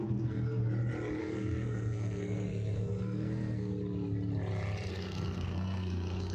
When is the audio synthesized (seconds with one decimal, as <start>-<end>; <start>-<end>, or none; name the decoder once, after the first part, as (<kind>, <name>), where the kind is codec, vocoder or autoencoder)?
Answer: 0.0-0.6 (codec, SNAC); 1.2-3.7; 4.9-6.3